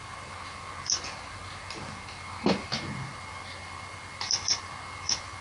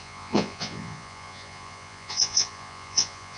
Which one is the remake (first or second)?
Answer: second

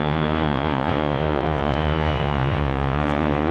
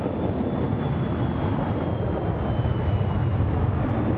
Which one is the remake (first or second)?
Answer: first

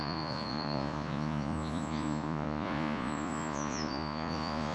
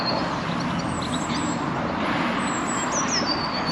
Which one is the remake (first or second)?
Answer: first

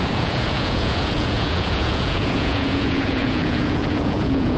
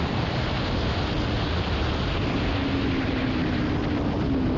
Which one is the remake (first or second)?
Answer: first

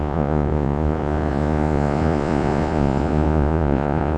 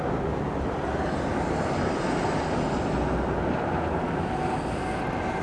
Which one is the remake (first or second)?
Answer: first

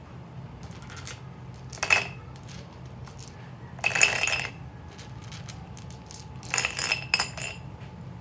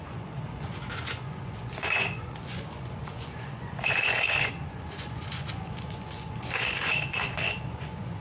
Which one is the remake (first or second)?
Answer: second